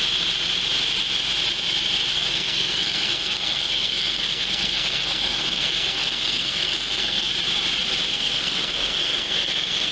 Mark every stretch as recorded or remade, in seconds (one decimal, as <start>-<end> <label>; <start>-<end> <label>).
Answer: 0.0-2.1 recorded; 2.1-7.3 remade; 7.3-8.1 recorded; 8.1-9.9 remade